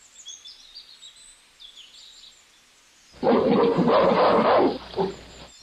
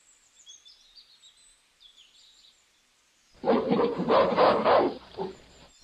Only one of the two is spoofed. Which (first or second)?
second